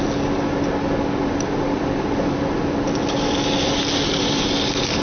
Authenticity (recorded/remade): recorded